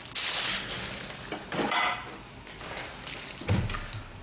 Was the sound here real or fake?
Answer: real